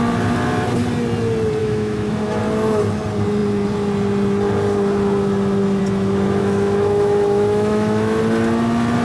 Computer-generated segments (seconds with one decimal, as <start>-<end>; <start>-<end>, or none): 1.6-2.4; 6.4-8.2